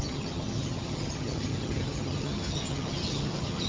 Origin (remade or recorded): remade